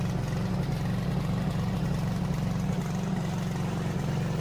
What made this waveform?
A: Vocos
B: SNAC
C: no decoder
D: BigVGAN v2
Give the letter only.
C